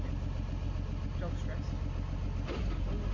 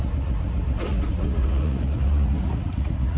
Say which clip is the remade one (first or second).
second